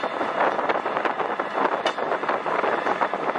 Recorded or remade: recorded